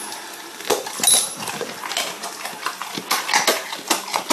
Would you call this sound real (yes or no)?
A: yes